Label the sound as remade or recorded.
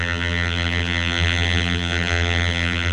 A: remade